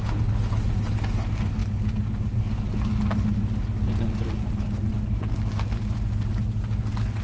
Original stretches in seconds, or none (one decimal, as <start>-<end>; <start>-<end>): 0.0-7.2